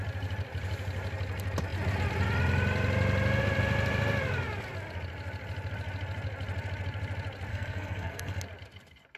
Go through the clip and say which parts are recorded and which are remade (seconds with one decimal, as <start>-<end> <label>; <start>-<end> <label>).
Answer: 0.0-7.5 recorded; 7.5-8.4 remade; 8.4-9.2 recorded